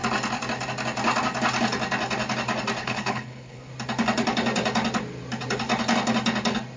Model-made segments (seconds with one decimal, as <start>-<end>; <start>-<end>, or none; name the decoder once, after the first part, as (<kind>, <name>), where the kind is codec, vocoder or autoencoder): 2.8-3.7 (codec, HILCodec)